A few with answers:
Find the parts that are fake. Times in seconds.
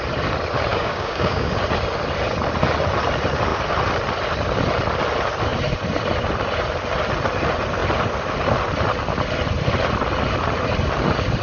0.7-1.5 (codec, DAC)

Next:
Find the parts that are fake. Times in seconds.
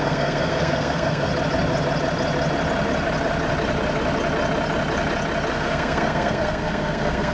0.0-1.3 (codec, SNAC); 5.5-7.3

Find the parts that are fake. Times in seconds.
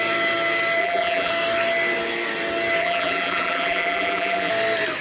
0.8-1.3 (vocoder, BigVGAN v2); 2.8-4.5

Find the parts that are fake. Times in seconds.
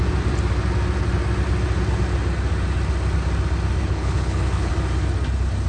3.8-4.7 (codec, HILCodec)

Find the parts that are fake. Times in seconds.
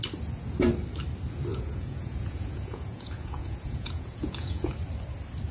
1.5-4.7 (vocoder, Vocos)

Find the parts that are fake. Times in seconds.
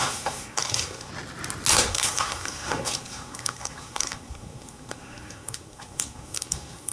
0.0-1.1 (codec, SNAC); 1.7-6.9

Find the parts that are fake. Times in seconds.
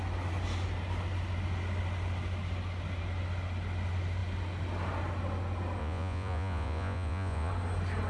5.8-7.5 (vocoder, Vocos)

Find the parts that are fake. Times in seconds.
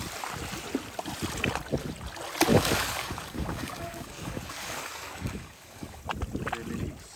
2.5-6.0 (codec, DAC)